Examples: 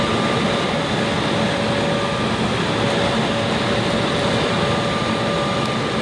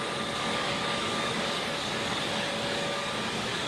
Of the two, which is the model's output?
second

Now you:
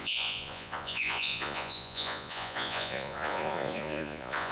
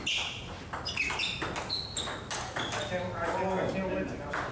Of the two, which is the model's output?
first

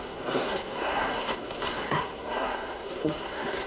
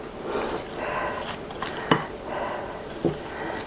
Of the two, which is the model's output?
first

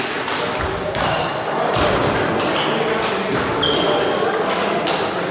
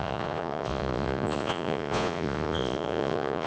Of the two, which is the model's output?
second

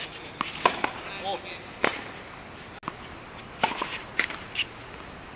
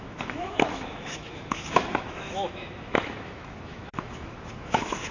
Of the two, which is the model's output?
second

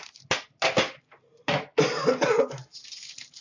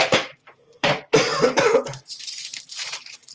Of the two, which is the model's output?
second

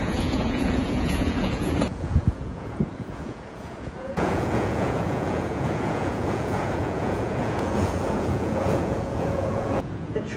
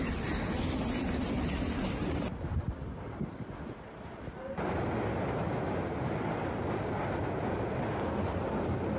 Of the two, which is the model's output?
first